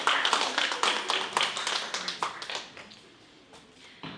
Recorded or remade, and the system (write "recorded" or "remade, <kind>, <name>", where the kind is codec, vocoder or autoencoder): recorded